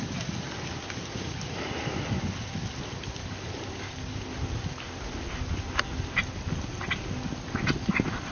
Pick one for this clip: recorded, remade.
recorded